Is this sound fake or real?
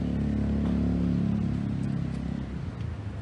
real